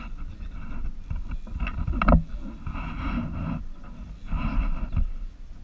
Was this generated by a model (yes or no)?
no